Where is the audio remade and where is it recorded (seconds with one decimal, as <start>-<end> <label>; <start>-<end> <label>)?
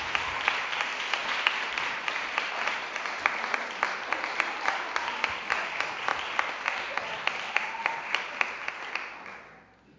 0.0-10.0 recorded